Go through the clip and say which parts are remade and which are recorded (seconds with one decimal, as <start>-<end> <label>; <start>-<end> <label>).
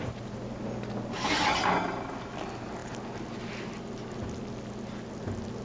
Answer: 0.0-5.6 recorded